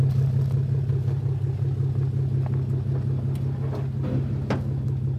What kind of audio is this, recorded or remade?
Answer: recorded